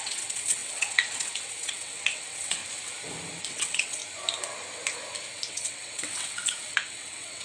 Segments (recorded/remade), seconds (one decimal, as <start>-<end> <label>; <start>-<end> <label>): 0.0-2.6 remade; 2.6-3.4 recorded; 3.4-4.0 remade; 4.0-5.5 recorded; 5.5-7.4 remade